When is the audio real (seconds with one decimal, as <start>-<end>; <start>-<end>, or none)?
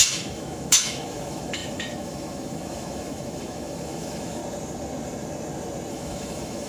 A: 4.4-5.9